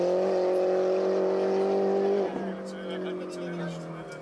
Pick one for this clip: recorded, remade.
recorded